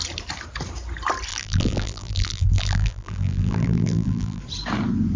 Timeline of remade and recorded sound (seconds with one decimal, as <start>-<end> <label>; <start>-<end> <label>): 0.0-1.3 recorded; 1.3-4.4 remade; 4.4-5.2 recorded